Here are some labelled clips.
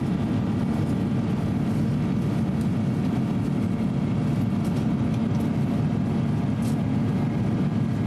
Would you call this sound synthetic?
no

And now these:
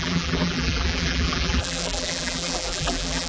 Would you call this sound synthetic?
yes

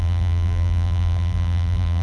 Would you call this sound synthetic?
yes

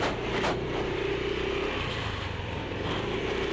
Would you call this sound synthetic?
no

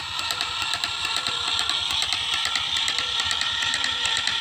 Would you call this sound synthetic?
yes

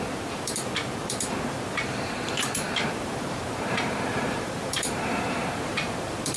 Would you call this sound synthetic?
yes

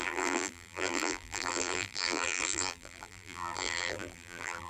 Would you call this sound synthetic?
yes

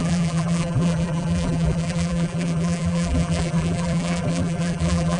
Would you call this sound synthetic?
yes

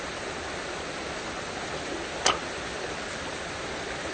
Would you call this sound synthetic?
no